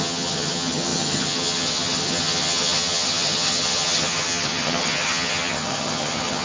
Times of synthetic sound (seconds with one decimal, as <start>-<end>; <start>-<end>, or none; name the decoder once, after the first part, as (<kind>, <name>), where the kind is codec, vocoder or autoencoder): 0.0-6.4 (vocoder, HiFi-GAN)